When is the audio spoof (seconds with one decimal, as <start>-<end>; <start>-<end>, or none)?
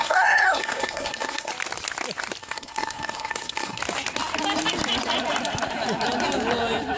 0.0-1.5; 2.4-3.8